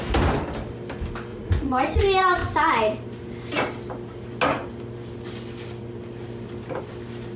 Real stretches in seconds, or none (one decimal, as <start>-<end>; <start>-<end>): 0.0-1.3; 2.0-7.4